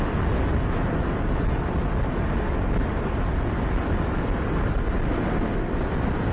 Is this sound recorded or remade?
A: recorded